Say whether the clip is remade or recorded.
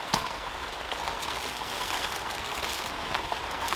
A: remade